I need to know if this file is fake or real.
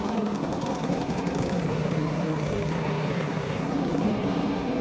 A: fake